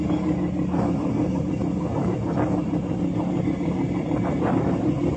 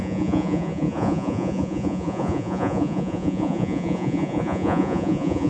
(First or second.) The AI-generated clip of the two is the second